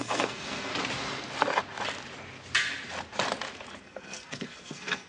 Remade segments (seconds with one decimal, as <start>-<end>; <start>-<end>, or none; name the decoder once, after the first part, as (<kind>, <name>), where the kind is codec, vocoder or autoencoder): 0.0-0.7 (codec, SNAC); 3.8-5.1

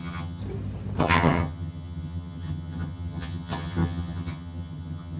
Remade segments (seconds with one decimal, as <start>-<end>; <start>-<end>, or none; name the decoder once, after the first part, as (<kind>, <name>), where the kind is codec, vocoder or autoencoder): 0.0-0.4 (vocoder, HiFi-GAN); 1.0-5.2

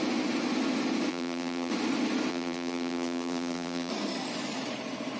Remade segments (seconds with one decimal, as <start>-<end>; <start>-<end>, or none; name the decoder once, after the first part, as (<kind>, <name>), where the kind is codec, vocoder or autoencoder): 1.1-1.7 (vocoder, BigVGAN v2); 2.3-3.9

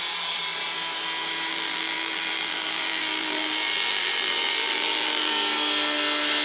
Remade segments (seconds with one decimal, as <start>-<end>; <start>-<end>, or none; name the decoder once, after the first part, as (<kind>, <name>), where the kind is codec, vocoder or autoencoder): 1.5-5.3 (vocoder, BigVGAN v2)

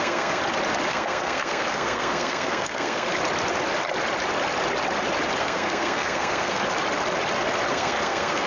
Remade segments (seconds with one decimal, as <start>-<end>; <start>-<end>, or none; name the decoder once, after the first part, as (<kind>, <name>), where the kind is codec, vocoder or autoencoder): 0.0-0.4 (codec, SNAC); 0.9-3.1; 5.4-6.6; 7.7-8.5

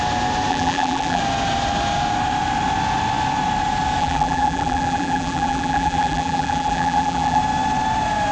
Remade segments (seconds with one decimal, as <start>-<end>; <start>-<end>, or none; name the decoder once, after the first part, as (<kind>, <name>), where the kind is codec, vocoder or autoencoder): 0.5-1.2 (vocoder, BigVGAN v2); 4.0-7.4

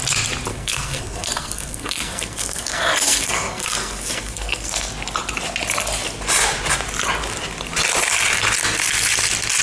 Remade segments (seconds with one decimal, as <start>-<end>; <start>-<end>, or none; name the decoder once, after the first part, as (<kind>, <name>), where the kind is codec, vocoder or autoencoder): 0.5-4.9 (codec, SNAC)